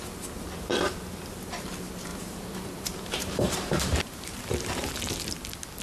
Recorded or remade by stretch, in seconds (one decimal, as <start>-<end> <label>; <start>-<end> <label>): 0.0-2.1 recorded; 2.1-5.1 remade; 5.1-5.8 recorded